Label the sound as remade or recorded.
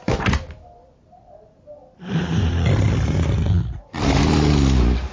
recorded